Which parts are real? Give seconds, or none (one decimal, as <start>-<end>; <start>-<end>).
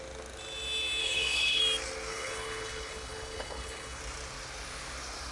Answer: 0.0-1.0; 1.6-2.1; 4.0-5.3